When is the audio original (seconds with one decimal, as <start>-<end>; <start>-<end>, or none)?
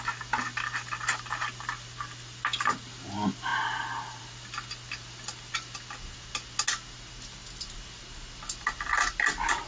0.0-9.7